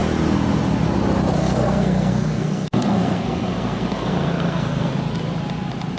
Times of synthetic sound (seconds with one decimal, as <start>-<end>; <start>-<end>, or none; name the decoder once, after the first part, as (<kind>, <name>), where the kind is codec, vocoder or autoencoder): 1.4-5.0 (codec, SNAC)